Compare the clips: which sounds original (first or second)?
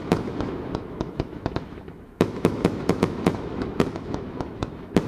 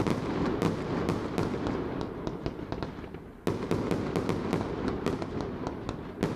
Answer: second